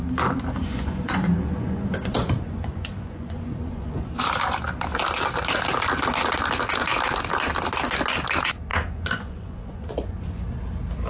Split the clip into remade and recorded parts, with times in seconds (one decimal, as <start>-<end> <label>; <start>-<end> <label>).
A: 0.0-0.7 recorded; 0.7-4.0 remade; 4.0-8.7 recorded; 8.7-10.4 remade; 10.4-11.1 recorded